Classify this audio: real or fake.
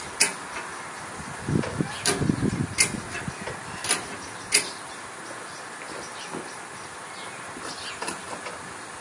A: real